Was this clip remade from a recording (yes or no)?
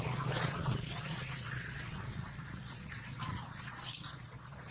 yes